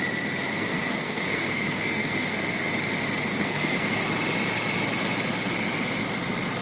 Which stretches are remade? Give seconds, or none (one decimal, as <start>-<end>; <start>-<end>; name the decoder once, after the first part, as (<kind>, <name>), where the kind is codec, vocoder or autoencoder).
0.5-2.7 (codec, SNAC); 3.3-4.0